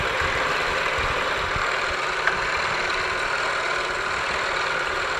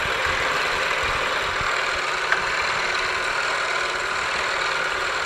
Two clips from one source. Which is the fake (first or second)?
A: first